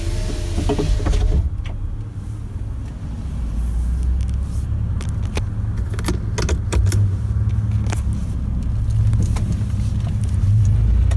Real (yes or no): yes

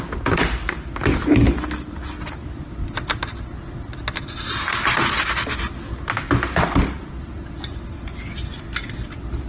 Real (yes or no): yes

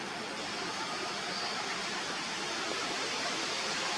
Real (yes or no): yes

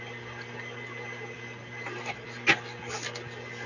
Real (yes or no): yes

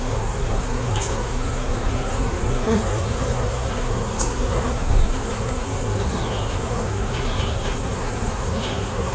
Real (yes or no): no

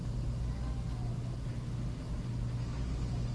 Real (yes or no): yes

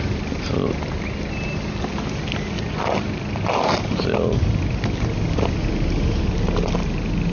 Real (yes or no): yes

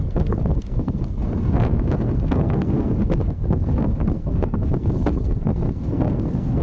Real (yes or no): no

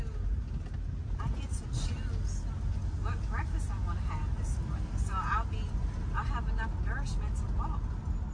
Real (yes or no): yes